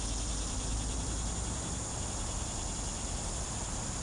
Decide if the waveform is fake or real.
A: real